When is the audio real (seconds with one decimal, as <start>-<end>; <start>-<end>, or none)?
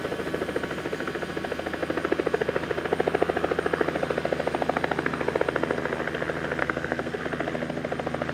0.0-6.6; 7.2-8.3